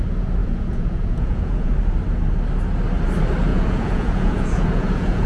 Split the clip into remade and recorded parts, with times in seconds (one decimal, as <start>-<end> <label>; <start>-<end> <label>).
0.0-0.4 recorded; 0.4-1.7 remade; 1.7-3.5 recorded; 3.5-5.3 remade